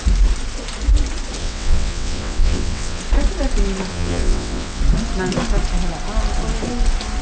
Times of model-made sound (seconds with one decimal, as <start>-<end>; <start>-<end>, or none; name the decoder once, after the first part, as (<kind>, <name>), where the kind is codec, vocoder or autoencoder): 1.4-3.0 (vocoder, WaveNeXt); 3.9-4.8